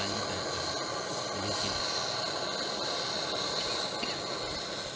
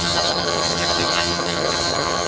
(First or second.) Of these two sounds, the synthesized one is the second